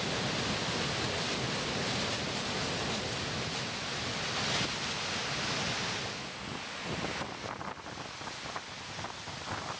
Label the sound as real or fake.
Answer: real